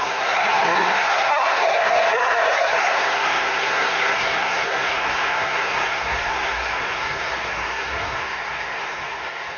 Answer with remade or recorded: remade